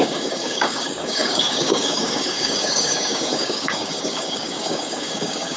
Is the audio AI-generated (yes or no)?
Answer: yes